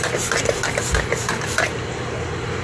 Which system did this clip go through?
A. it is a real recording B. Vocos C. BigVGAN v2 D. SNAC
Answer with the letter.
A